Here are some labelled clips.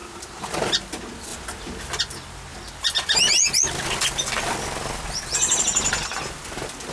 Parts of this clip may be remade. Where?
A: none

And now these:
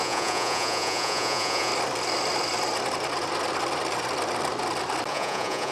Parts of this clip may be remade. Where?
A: 0.0-1.7 (vocoder, Vocos); 5.1-5.7

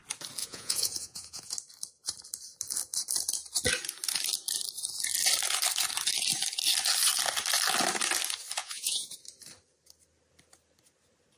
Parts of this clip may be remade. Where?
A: 0.4-1.5 (vocoder, Vocos); 8.6-9.2

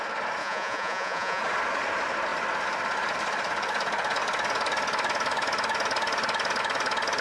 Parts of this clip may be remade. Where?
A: 0.4-1.4 (vocoder, Vocos)

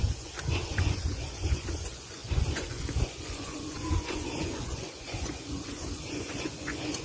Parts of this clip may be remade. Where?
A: 0.0-7.0 (vocoder, Vocos)